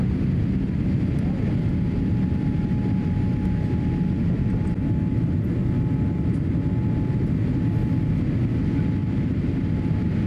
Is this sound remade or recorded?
recorded